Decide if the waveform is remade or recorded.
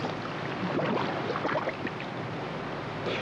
recorded